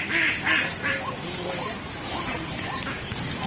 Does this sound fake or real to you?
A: real